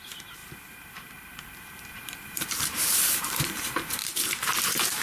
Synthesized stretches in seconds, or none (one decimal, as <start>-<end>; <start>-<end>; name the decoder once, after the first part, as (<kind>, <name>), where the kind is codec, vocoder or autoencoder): 0.0-5.0 (vocoder, BigVGAN v2)